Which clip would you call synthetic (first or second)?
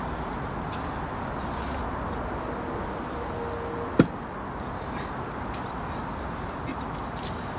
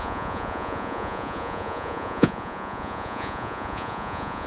second